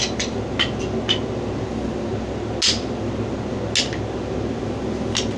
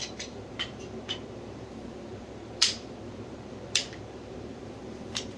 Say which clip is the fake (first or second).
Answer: second